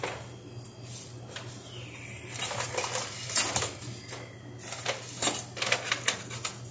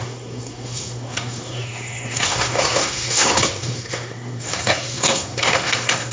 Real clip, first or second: first